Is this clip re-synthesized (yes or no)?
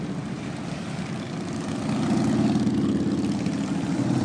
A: no